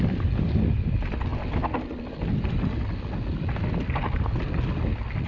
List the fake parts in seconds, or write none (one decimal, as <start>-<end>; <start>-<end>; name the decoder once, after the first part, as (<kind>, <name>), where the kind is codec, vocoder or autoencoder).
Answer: none